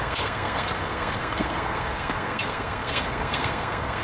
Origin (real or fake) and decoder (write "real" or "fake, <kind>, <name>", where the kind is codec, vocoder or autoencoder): fake, codec, SNAC